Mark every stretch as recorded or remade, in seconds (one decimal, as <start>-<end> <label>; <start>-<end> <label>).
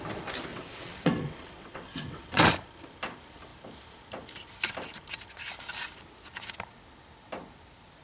0.0-0.5 recorded; 0.5-2.4 remade; 2.4-8.0 recorded